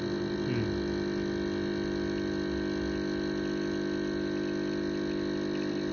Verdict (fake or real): real